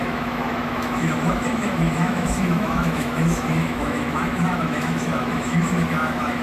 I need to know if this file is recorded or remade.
remade